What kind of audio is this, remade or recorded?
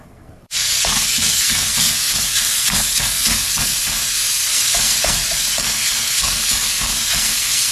remade